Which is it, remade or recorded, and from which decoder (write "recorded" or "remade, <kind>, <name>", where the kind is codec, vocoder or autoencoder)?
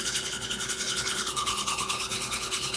remade, codec, HILCodec